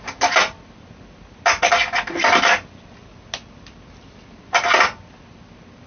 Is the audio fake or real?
real